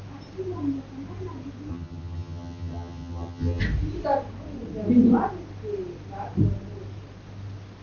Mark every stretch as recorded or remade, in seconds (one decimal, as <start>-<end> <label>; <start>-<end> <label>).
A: 0.0-1.7 recorded; 1.7-3.6 remade; 3.6-7.8 recorded